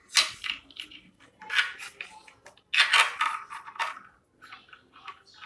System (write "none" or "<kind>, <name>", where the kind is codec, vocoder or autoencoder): none